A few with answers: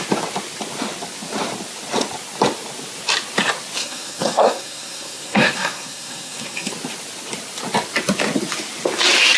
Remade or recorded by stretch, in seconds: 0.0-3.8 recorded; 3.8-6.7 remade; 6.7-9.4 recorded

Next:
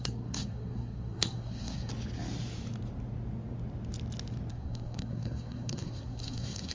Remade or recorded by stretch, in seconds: 0.0-1.9 remade; 1.9-4.5 recorded; 4.5-6.7 remade